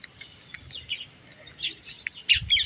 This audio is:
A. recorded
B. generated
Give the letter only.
A